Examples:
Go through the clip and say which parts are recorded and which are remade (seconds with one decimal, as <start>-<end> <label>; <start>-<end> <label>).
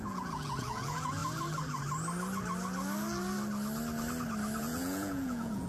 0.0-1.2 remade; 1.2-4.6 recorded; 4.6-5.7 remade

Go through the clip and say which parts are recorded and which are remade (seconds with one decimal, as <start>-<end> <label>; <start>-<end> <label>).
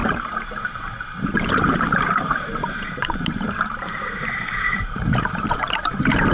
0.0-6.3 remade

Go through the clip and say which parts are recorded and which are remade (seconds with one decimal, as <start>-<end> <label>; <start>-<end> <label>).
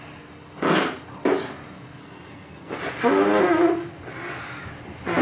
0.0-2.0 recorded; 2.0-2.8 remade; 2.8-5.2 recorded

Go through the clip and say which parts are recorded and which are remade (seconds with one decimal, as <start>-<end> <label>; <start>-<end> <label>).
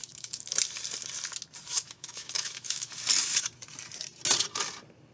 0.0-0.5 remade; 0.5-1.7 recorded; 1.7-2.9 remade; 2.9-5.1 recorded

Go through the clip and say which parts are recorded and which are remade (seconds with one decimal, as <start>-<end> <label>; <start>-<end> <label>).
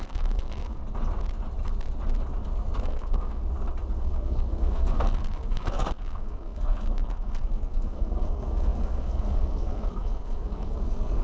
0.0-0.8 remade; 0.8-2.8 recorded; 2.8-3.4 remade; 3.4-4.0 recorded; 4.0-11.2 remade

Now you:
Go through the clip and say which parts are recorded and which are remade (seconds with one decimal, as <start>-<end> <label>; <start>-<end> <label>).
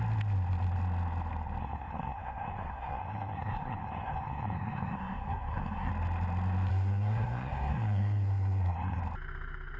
0.0-1.6 recorded; 1.6-5.9 remade; 5.9-6.7 recorded; 6.7-9.0 remade; 9.0-9.8 recorded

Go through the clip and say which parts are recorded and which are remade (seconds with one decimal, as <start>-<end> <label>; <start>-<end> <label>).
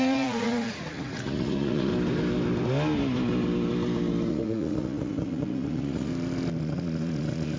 0.0-1.9 remade; 1.9-4.3 recorded; 4.3-6.1 remade; 6.1-6.6 recorded; 6.6-7.6 remade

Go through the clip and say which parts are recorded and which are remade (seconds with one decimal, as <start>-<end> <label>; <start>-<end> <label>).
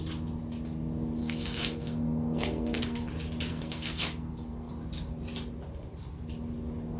0.0-1.2 recorded; 1.2-3.1 remade; 3.1-3.5 recorded; 3.5-4.7 remade; 4.7-7.0 recorded